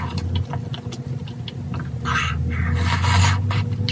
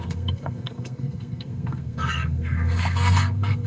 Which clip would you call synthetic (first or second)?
second